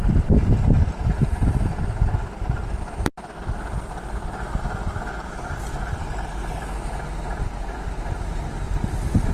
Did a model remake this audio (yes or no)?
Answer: no